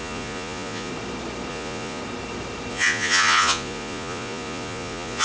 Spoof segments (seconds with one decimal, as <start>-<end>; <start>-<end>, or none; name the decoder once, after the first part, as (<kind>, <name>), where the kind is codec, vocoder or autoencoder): 0.0-0.9 (vocoder, Vocos); 1.5-2.0; 2.7-5.2

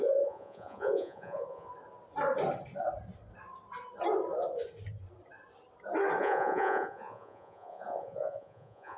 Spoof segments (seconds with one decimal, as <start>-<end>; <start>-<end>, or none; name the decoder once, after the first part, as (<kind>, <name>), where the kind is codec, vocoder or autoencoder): 0.0-1.7 (vocoder, Vocos); 6.2-9.0

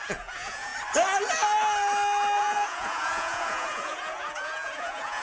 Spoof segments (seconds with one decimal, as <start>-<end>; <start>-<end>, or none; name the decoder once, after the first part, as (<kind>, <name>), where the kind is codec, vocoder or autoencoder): 0.0-0.7 (vocoder, Vocos); 2.4-5.2